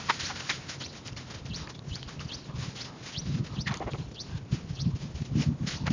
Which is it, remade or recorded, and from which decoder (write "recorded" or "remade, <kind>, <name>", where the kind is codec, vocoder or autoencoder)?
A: recorded